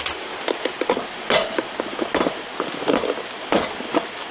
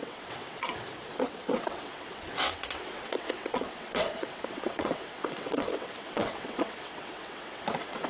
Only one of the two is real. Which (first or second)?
first